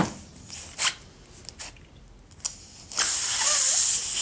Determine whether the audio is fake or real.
real